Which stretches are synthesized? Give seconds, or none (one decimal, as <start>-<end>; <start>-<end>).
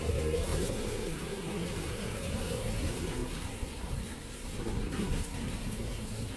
0.0-6.4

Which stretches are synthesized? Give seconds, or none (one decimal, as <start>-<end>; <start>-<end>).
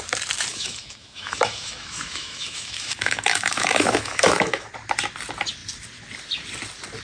0.5-4.7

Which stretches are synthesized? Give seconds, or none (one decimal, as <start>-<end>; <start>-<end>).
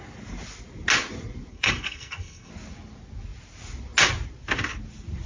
1.5-2.5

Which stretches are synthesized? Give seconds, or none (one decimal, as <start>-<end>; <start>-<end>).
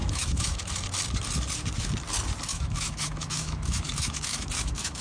0.0-0.7; 2.5-5.0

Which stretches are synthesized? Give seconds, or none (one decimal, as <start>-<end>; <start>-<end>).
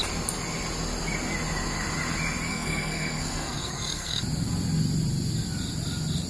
2.5-4.2